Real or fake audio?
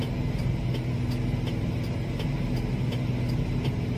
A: real